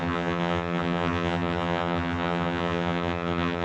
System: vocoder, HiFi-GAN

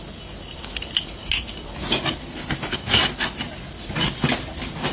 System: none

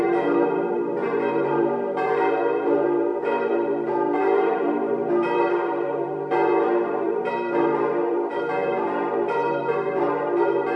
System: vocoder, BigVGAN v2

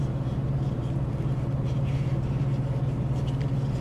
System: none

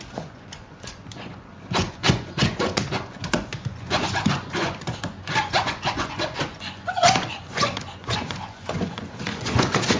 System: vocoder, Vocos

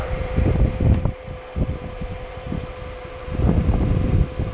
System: vocoder, BigVGAN v2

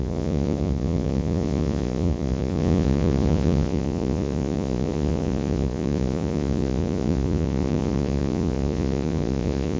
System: vocoder, Vocos